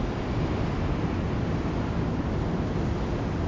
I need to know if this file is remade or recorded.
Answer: recorded